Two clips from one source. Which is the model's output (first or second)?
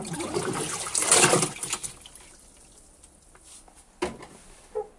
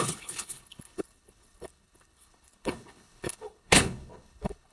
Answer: second